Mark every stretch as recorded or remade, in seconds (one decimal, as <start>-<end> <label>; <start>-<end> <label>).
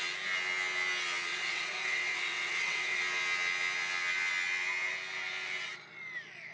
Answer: 0.0-1.3 recorded; 1.3-3.0 remade; 3.0-6.5 recorded